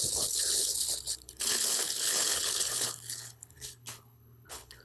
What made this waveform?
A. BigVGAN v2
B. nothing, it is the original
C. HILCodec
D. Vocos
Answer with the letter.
C